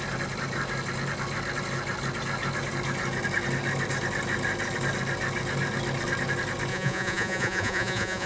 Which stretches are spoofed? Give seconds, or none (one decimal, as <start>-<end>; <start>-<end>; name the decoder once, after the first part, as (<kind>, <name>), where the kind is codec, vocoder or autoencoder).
6.7-8.3 (vocoder, Vocos)